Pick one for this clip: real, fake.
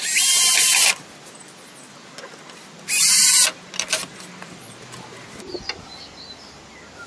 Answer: real